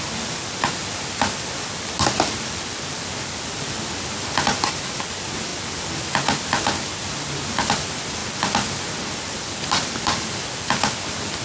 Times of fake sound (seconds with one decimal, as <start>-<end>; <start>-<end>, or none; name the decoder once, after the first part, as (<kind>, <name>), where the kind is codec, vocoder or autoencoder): none